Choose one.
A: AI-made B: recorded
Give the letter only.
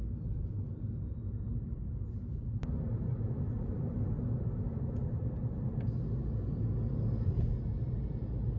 B